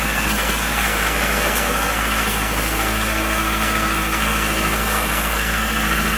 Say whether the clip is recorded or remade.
remade